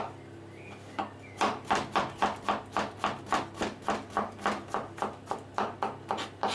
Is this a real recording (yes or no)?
yes